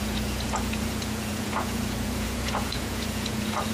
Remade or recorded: remade